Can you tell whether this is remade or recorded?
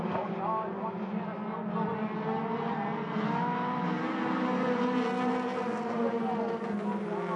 recorded